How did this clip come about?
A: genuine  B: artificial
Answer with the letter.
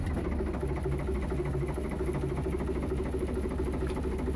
A